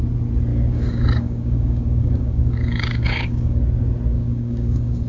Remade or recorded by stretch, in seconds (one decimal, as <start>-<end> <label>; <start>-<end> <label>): 0.0-0.5 recorded; 0.5-3.6 remade; 3.6-4.1 recorded; 4.1-5.1 remade